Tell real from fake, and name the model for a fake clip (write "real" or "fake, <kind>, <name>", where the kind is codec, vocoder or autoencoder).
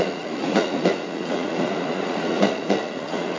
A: fake, vocoder, Vocos